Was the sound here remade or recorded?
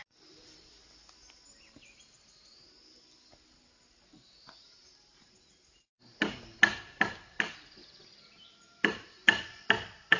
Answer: recorded